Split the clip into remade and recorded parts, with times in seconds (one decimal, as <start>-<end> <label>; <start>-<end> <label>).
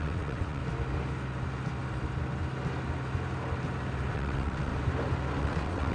0.0-0.6 remade; 0.6-4.1 recorded; 4.1-4.7 remade; 4.7-5.4 recorded; 5.4-5.9 remade